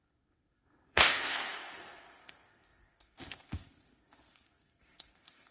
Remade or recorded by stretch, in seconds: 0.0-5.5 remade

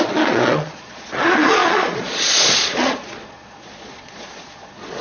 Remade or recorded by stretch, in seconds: 0.0-5.0 remade